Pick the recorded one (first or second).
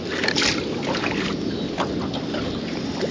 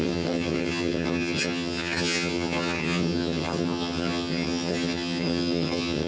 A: first